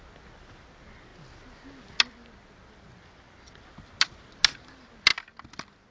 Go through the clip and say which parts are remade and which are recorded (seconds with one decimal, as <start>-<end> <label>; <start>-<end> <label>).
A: 0.0-5.9 recorded